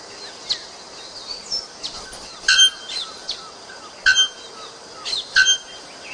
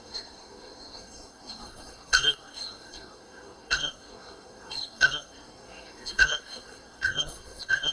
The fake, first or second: second